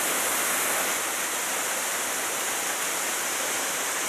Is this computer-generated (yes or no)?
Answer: no